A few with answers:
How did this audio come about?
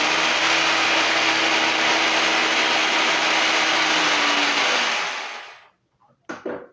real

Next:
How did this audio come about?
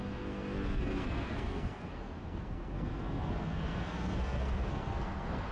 fake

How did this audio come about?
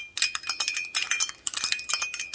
real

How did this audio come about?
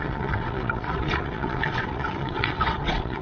fake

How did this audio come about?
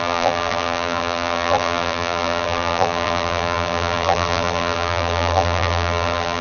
fake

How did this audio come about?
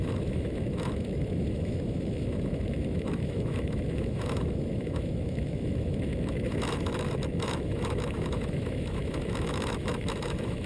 fake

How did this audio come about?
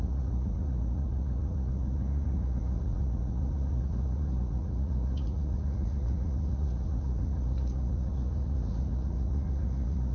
fake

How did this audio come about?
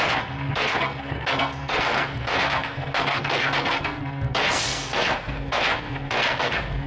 fake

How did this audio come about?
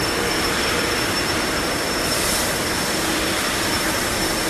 fake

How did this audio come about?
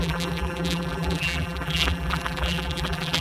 fake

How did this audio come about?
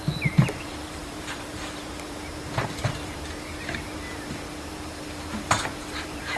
fake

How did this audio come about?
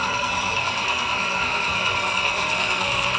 fake